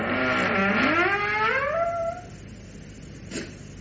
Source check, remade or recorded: recorded